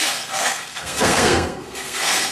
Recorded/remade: remade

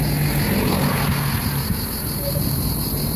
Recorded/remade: recorded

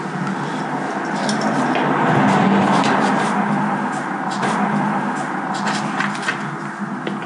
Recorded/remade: recorded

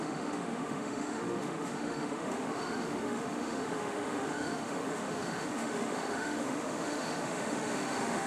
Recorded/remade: remade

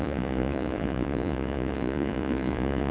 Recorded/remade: remade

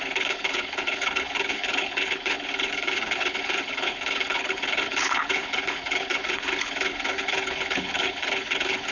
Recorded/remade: remade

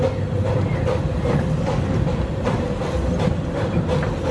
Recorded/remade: recorded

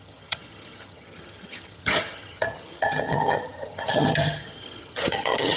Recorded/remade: remade